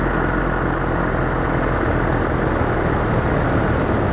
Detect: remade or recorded recorded